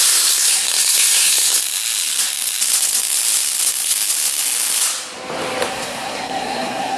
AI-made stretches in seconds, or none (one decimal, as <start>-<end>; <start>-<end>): 0.0-1.6; 5.7-7.0